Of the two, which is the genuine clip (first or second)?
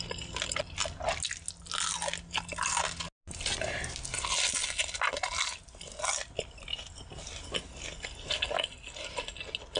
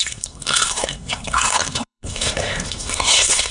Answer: first